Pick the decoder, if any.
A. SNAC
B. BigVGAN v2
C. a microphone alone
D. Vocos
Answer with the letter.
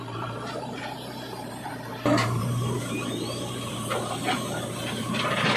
B